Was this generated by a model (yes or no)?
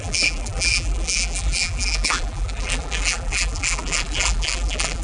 yes